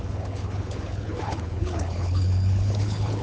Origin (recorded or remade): remade